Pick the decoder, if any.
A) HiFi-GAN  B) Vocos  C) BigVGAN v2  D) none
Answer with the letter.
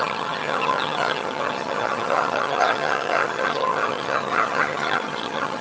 A